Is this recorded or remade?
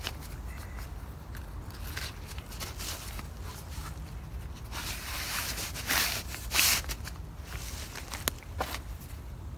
recorded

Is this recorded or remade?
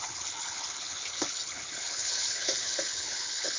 remade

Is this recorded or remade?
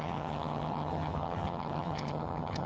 remade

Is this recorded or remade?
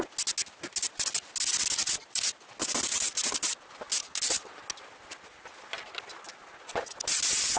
recorded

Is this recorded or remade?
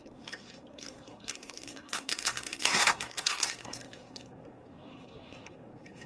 remade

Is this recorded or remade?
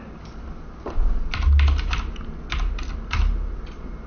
recorded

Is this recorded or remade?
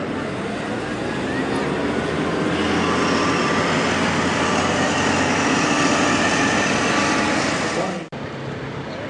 recorded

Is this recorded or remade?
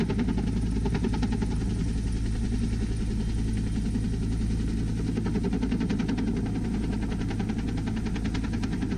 recorded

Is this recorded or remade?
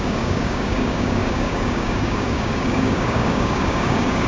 remade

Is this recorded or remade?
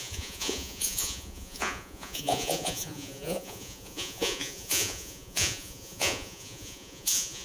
remade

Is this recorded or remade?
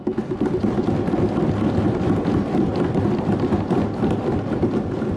recorded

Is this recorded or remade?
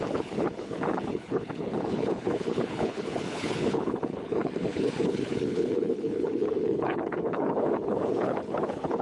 remade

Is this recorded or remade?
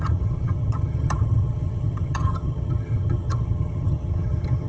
remade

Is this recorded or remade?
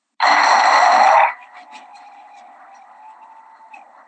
recorded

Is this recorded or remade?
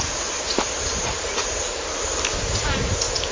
remade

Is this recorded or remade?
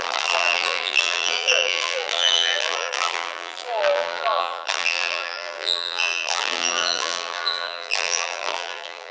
remade